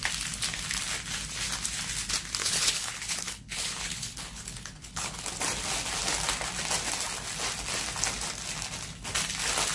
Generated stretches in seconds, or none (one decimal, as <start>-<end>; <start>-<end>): 2.4-5.3